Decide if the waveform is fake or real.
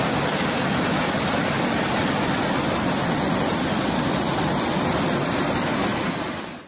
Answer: real